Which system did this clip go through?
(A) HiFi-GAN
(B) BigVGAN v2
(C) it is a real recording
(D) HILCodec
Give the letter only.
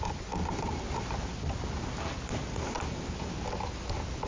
C